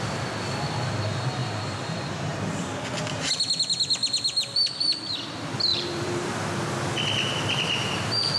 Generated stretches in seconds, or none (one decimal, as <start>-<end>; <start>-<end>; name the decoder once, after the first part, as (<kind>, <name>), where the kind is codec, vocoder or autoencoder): 1.4-2.2 (vocoder, BigVGAN v2); 5.7-6.3